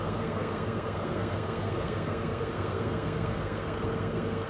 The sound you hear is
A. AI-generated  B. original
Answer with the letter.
A